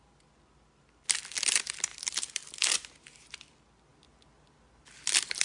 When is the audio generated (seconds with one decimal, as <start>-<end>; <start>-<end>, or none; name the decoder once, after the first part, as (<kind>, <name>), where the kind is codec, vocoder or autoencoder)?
none